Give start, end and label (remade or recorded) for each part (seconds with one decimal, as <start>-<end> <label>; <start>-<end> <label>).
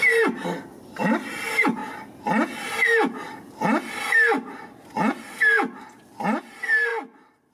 0.0-7.5 recorded